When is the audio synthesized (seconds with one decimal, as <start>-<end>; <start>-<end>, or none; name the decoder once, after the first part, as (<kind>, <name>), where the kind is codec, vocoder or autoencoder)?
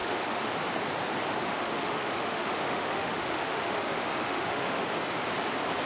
0.0-0.5 (autoencoder, DAC-VAE); 1.3-4.8